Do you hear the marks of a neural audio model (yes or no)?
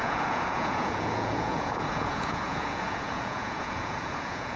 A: yes